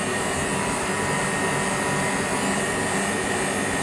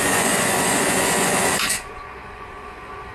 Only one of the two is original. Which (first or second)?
first